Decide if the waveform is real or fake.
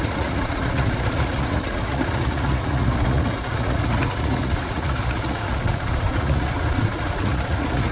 fake